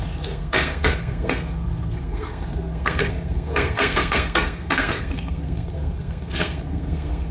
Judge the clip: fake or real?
fake